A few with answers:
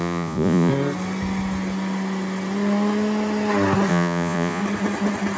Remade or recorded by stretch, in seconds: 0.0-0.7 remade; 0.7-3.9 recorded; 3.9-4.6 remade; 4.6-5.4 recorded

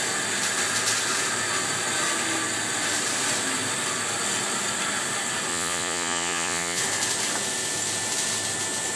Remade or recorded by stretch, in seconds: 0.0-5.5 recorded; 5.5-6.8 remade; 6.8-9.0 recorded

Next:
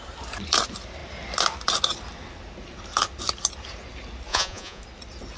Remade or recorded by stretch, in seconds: 0.0-4.3 recorded; 4.3-4.8 remade; 4.8-5.4 recorded

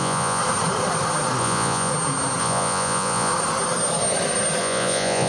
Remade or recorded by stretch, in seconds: 0.0-0.4 remade; 0.4-1.4 recorded; 1.4-1.9 remade; 1.9-2.4 recorded; 2.4-3.3 remade; 3.3-4.6 recorded; 4.6-5.3 remade

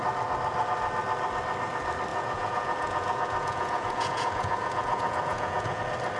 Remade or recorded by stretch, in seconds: 0.0-2.1 recorded; 2.1-5.8 remade; 5.8-6.2 recorded

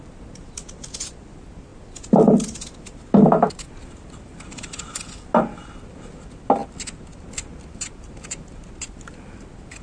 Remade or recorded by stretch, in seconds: 0.0-9.8 recorded